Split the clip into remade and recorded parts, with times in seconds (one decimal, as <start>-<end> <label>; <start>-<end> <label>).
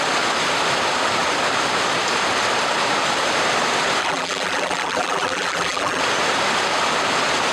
0.0-4.0 recorded; 4.0-6.0 remade; 6.0-7.5 recorded